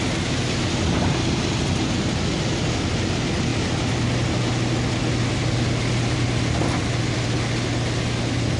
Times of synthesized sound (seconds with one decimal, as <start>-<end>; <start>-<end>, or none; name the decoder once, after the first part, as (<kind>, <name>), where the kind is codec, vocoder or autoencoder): none